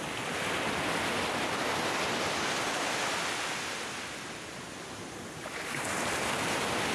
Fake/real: real